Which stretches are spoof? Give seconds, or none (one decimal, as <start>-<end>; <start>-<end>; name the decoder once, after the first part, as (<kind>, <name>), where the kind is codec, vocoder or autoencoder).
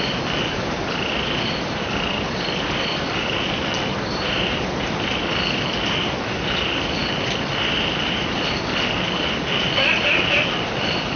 0.0-7.0 (vocoder, BigVGAN v2); 9.6-11.2